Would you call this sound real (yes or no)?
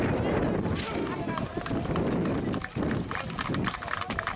yes